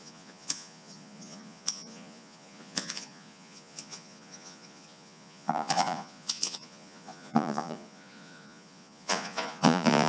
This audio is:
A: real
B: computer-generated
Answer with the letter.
B